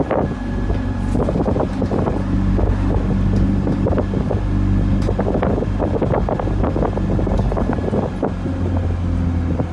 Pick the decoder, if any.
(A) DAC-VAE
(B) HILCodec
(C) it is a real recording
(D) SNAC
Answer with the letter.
C